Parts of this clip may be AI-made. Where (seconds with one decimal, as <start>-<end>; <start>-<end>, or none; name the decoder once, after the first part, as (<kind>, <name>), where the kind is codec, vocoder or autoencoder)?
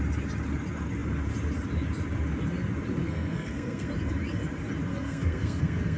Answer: 3.0-3.9 (codec, SNAC); 4.9-6.0